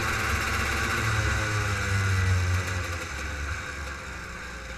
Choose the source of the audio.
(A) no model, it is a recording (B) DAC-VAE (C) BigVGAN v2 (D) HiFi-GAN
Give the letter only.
A